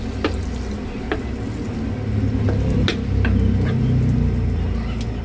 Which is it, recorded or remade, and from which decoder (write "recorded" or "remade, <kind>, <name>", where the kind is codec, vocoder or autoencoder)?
recorded